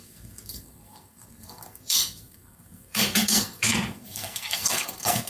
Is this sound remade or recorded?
remade